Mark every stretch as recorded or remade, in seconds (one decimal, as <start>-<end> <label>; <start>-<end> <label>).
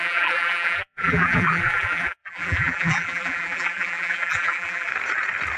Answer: 0.0-4.9 remade; 4.9-5.6 recorded